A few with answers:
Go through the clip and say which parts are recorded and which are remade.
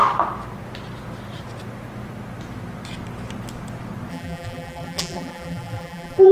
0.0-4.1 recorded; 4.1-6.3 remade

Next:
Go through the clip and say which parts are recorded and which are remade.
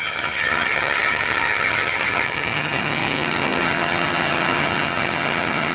0.0-5.7 remade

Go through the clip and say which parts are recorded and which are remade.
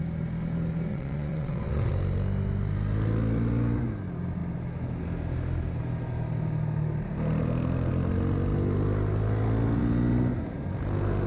0.0-0.9 recorded; 0.9-1.9 remade; 1.9-11.3 recorded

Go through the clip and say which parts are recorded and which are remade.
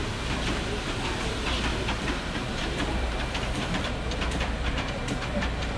0.0-1.7 recorded; 1.7-5.2 remade; 5.2-5.8 recorded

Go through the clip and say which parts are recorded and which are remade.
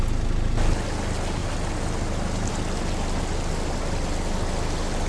0.0-5.1 recorded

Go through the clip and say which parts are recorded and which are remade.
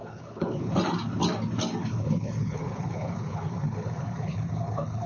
0.0-0.7 remade; 0.7-1.8 recorded; 1.8-5.1 remade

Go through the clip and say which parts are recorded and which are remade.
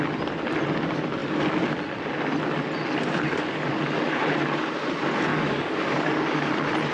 0.0-5.3 recorded; 5.3-6.5 remade; 6.5-6.9 recorded